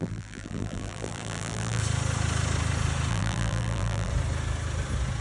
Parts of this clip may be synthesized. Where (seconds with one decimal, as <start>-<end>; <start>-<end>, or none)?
0.0-1.8; 3.1-4.1